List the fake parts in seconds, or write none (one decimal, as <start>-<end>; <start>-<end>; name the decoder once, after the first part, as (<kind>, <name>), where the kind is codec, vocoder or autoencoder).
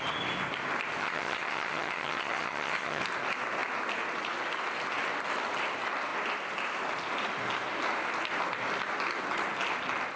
1.0-3.0 (vocoder, HiFi-GAN)